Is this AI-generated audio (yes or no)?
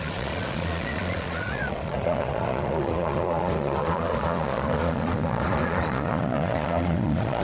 yes